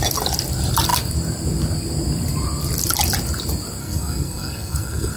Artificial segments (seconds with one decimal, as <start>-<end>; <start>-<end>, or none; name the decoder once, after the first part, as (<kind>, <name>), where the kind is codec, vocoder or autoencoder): 3.8-5.2 (codec, SNAC)